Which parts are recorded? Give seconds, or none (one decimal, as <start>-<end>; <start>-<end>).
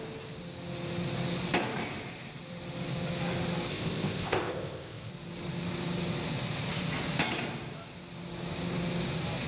0.0-3.7; 5.1-9.5